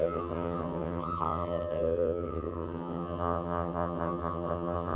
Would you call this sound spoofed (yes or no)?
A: yes